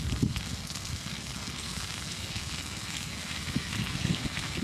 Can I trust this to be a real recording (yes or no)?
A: no